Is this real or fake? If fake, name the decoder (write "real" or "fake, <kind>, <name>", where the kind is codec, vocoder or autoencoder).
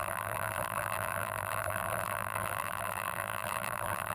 fake, vocoder, BigVGAN v2